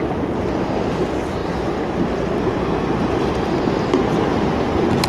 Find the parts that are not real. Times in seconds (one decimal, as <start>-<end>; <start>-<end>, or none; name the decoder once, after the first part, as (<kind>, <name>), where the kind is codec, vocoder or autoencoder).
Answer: none